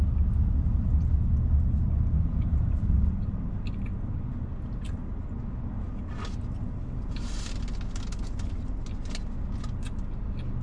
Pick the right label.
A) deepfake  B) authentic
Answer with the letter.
B